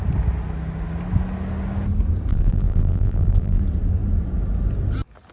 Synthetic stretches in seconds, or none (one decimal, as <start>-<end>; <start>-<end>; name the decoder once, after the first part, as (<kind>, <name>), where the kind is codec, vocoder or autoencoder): 2.3-3.6 (vocoder, BigVGAN v2)